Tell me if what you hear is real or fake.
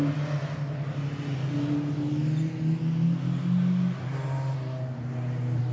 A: real